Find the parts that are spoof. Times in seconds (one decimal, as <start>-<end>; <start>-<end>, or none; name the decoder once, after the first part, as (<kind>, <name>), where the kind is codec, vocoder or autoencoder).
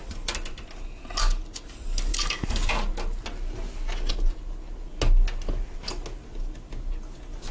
2.1-2.7 (codec, DAC)